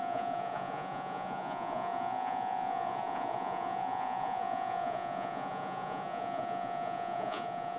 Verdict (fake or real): fake